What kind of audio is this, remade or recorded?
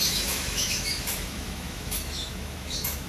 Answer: remade